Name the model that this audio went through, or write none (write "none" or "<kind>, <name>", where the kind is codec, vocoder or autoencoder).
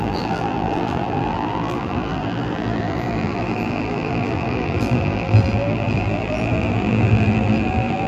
vocoder, BigVGAN v2